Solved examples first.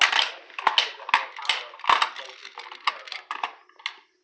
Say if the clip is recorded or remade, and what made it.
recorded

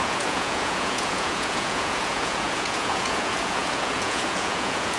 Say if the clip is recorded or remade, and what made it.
remade, vocoder, Vocos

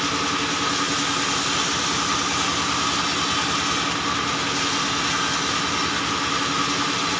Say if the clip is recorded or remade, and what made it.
recorded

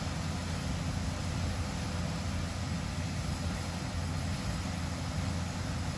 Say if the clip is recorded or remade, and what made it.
recorded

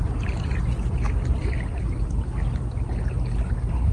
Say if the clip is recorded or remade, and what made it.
recorded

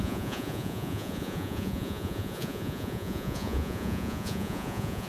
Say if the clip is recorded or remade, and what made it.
remade, vocoder, Vocos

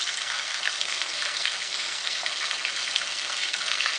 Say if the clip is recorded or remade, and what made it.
remade, codec, SNAC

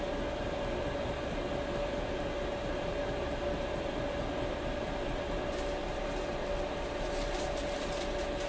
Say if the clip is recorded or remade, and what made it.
recorded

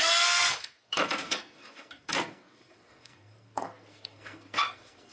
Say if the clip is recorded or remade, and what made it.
remade, codec, SNAC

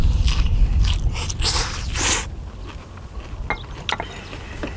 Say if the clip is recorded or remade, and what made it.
recorded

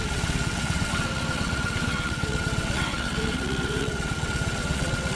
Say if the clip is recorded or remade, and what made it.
remade, vocoder, WaveNeXt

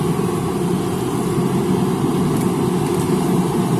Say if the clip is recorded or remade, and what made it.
recorded